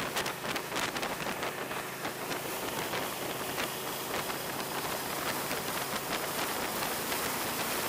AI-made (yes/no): no